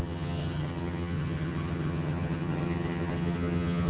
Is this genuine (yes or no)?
no